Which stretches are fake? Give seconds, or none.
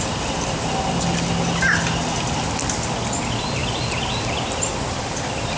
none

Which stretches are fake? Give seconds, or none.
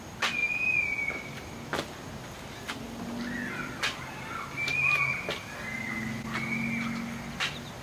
none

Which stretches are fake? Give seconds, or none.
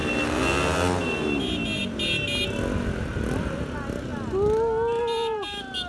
none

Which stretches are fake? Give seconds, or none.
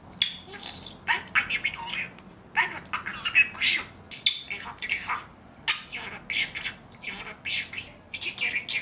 none